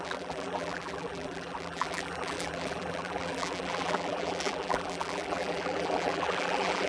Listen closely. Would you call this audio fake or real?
fake